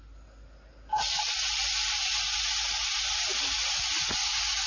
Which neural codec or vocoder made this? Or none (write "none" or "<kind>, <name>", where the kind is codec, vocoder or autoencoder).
none